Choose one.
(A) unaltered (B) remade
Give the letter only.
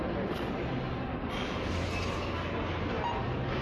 A